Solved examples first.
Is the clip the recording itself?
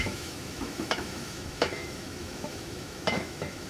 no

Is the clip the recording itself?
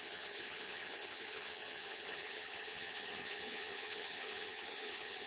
no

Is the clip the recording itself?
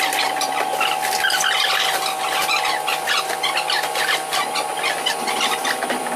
yes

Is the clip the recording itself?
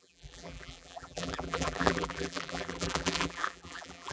no